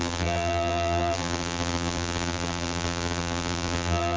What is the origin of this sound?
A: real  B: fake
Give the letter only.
B